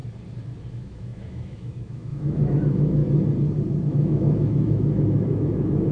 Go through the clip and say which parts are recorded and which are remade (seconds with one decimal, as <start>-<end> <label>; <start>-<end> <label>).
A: 0.0-0.7 recorded; 0.7-3.0 remade; 3.0-3.9 recorded; 3.9-5.9 remade